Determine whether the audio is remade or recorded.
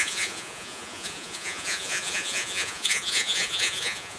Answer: remade